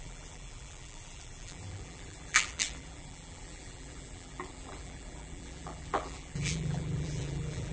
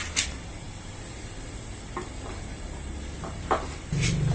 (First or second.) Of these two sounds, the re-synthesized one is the first